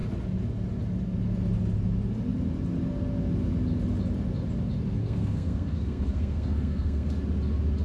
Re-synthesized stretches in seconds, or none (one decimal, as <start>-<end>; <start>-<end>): 5.0-7.1